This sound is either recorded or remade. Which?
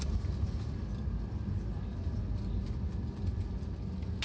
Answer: recorded